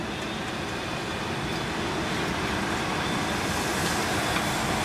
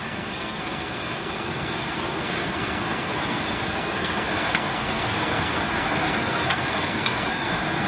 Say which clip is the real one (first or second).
first